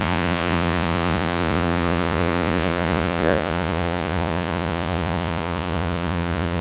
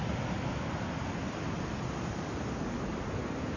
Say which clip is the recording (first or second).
second